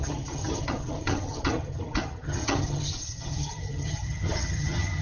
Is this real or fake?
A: fake